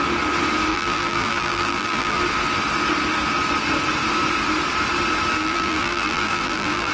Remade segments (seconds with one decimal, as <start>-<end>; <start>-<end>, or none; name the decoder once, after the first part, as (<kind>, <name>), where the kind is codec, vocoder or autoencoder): 0.7-2.2 (vocoder, BigVGAN v2); 5.3-6.9